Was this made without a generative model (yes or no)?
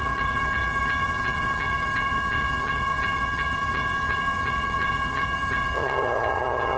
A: no